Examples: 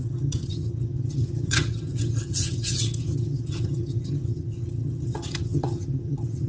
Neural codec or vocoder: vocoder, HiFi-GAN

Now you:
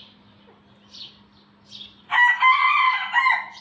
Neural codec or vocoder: none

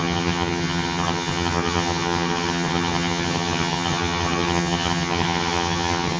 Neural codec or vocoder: vocoder, HiFi-GAN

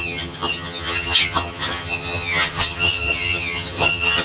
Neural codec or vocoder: vocoder, HiFi-GAN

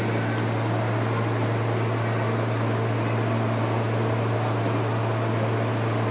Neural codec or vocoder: none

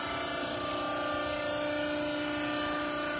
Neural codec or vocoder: none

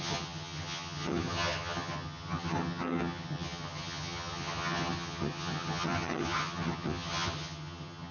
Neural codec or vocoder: vocoder, HiFi-GAN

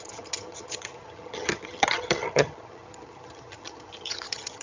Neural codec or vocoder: vocoder, HiFi-GAN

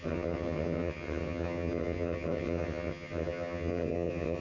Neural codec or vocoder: vocoder, HiFi-GAN